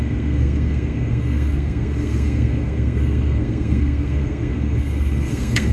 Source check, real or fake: fake